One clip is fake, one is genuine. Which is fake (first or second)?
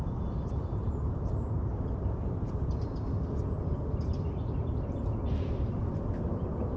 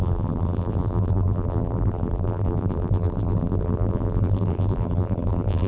second